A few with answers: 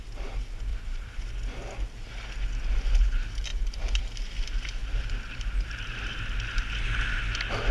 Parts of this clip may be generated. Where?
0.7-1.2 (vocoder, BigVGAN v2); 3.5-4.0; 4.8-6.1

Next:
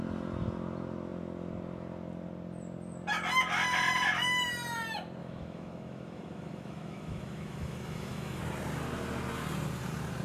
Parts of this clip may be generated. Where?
5.2-8.4 (autoencoder, DAC-VAE)

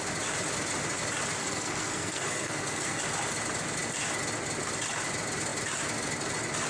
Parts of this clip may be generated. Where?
1.4-3.0 (codec, SNAC)

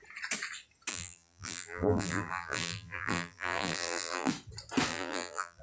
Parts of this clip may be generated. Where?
0.9-4.3 (vocoder, BigVGAN v2); 4.9-5.6

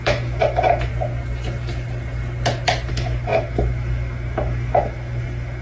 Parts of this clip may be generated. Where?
0.0-0.9 (autoencoder, DAC-VAE); 2.9-5.6

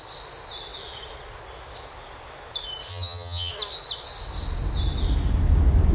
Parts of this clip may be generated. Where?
2.9-3.5 (vocoder, HiFi-GAN)

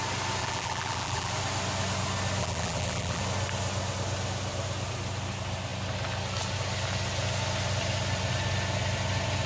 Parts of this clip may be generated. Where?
0.4-1.3 (vocoder, BigVGAN v2); 2.4-3.2

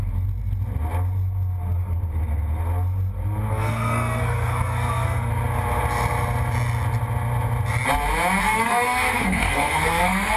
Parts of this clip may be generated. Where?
3.5-5.3 (codec, SNAC); 8.4-10.4